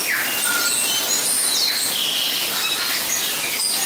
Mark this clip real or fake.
real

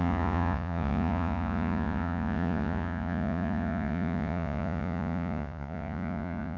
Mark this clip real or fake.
fake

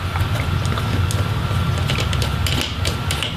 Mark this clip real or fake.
real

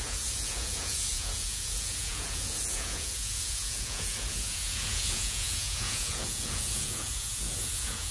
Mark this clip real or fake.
fake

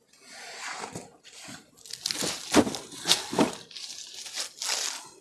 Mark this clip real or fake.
real